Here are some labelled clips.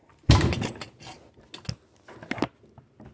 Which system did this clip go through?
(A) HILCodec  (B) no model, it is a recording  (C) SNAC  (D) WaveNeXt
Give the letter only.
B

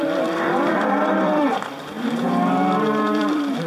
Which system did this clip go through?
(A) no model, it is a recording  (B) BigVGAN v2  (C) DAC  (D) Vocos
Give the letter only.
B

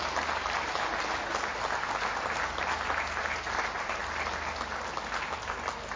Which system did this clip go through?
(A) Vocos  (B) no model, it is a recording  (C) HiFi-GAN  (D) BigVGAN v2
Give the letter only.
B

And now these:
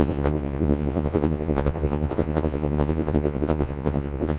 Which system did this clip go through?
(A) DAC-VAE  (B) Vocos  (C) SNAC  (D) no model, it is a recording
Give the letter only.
B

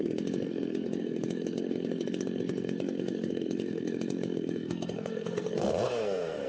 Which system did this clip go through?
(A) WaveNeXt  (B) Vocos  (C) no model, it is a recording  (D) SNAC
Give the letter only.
D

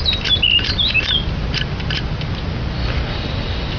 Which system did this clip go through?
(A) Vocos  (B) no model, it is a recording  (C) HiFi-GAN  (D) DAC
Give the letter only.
B